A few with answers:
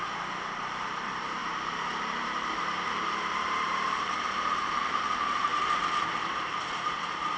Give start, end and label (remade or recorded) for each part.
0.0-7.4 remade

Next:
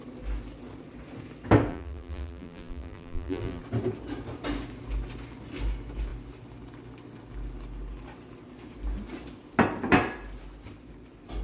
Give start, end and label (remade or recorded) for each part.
0.0-1.7 recorded; 1.7-3.6 remade; 3.6-11.4 recorded